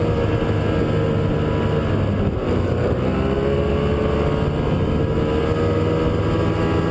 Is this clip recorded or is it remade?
recorded